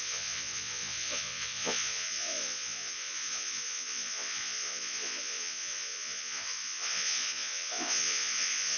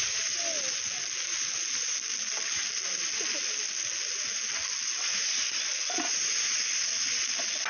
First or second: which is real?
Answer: second